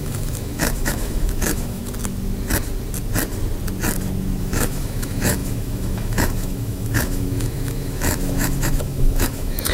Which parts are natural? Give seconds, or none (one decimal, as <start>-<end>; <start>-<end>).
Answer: 1.8-4.4